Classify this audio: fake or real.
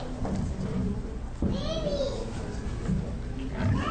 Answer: real